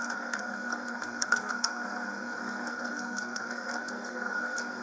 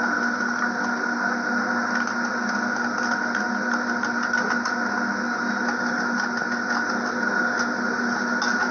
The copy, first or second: first